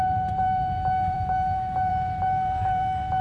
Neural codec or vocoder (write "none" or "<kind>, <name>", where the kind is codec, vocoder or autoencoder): vocoder, BigVGAN v2